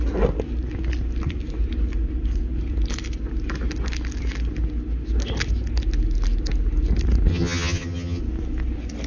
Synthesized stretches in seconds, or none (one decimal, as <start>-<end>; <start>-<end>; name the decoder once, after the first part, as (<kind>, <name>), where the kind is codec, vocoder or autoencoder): 7.3-8.2 (vocoder, HiFi-GAN)